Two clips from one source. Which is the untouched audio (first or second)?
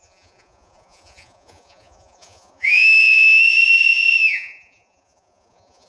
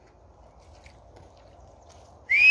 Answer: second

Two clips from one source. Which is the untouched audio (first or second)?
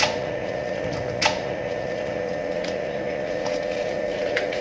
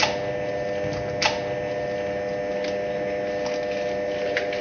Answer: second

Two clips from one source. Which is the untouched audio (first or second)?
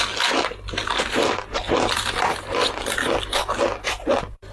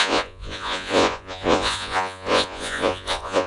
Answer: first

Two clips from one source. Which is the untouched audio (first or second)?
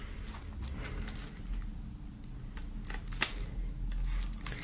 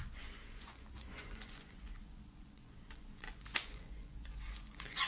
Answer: first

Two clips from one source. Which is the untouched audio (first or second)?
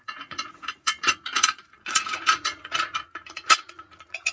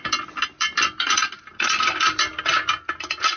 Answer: second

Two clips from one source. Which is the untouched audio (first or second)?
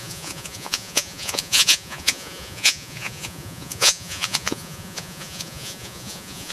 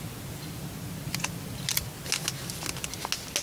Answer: second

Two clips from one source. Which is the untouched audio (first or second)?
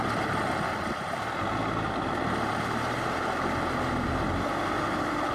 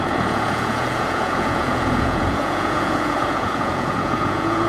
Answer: first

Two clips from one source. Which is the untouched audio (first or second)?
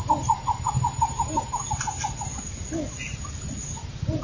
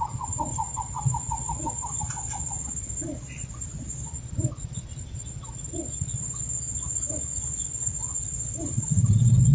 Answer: first